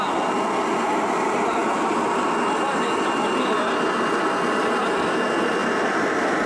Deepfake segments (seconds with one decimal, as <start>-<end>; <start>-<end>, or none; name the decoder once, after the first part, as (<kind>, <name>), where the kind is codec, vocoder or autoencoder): none